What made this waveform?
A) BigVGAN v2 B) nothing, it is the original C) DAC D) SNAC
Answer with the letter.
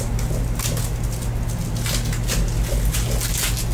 B